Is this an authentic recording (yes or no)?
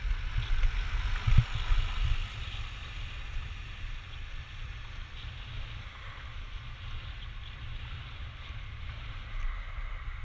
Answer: yes